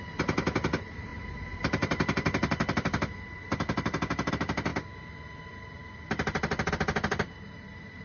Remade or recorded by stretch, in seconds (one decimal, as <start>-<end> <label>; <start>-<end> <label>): 0.0-8.0 recorded